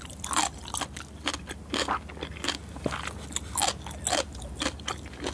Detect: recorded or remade recorded